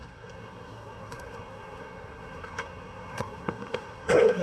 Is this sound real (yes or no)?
no